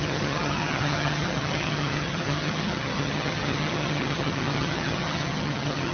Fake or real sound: fake